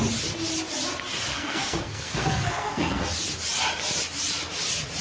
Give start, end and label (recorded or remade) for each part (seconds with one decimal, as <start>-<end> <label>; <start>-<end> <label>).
0.0-1.3 recorded; 1.3-3.0 remade; 3.0-5.0 recorded